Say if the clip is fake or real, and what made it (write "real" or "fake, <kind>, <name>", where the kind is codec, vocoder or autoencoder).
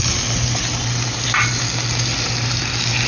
real